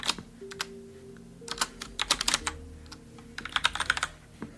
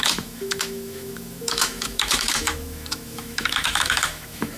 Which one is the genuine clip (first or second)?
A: first